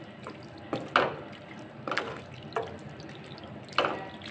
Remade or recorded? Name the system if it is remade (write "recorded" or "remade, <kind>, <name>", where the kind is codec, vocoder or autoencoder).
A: recorded